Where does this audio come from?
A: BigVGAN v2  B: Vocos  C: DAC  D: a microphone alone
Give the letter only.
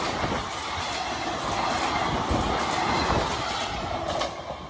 D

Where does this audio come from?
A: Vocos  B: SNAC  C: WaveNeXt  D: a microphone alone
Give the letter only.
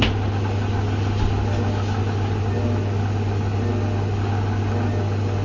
D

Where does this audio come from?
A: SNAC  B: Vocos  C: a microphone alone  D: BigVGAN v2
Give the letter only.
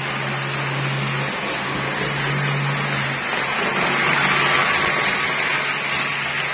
C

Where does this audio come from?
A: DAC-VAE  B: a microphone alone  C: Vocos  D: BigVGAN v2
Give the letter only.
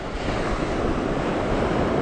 B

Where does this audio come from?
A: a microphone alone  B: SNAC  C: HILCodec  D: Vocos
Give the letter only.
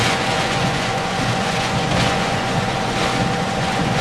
D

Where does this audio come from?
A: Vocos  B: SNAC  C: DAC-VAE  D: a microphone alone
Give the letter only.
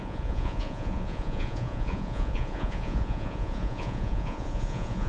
A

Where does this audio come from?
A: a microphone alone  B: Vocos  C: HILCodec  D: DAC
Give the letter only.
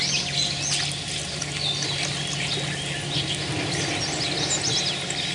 A